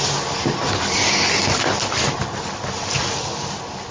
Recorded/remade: remade